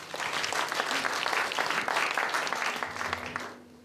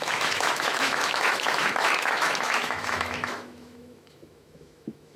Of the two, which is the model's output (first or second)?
second